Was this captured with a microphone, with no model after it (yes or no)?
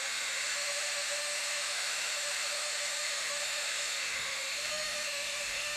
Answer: no